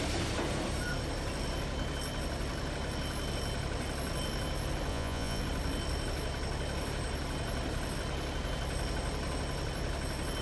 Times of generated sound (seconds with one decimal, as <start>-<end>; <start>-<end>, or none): 4.9-5.4